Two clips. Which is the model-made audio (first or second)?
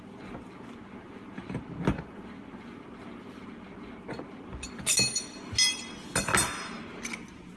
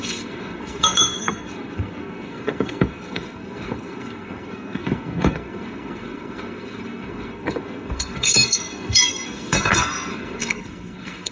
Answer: second